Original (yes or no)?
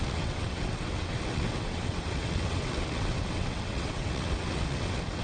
no